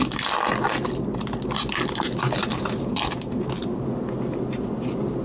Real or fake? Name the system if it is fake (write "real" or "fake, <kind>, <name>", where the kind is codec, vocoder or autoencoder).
real